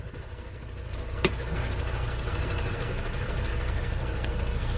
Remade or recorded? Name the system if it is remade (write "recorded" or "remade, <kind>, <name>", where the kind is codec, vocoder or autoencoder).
remade, codec, SNAC